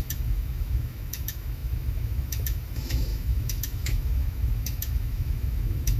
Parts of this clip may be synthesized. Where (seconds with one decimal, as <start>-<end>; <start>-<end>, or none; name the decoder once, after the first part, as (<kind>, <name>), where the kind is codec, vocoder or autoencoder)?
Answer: 0.0-6.0 (autoencoder, DAC-VAE)